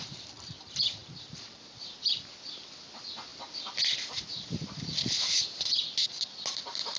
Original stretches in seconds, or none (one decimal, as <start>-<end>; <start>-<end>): 0.0-7.0